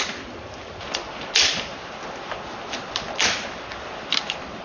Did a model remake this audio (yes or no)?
no